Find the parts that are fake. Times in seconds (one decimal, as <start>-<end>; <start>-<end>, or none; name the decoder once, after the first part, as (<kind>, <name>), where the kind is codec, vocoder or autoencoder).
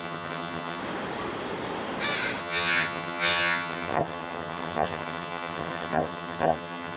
0.0-0.8 (vocoder, HiFi-GAN); 2.4-7.0